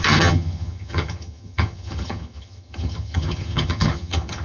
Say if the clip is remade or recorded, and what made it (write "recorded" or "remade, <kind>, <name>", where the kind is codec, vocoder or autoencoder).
remade, vocoder, HiFi-GAN